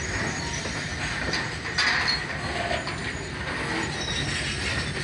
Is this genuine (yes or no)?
yes